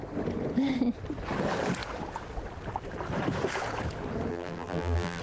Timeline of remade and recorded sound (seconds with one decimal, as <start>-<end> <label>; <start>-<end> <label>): 0.0-4.3 recorded; 4.3-5.2 remade